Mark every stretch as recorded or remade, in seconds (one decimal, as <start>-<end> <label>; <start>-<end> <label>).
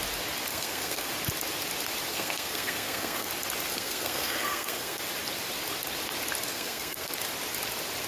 0.0-0.5 recorded; 0.5-1.1 remade; 1.1-2.1 recorded; 2.1-3.3 remade; 3.3-3.7 recorded; 3.7-5.0 remade; 5.0-6.5 recorded; 6.5-7.1 remade; 7.1-8.1 recorded